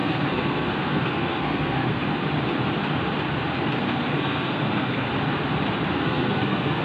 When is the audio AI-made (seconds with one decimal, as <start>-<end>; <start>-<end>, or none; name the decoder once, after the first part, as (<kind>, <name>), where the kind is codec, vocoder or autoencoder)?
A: 0.0-2.0 (codec, SNAC); 3.8-5.1; 5.9-6.8